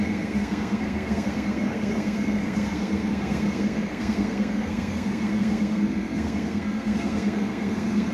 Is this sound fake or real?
fake